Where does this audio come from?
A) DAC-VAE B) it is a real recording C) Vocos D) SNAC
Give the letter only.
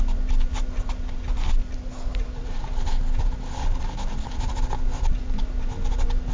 B